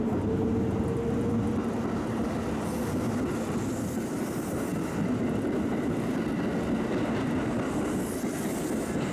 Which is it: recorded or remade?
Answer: recorded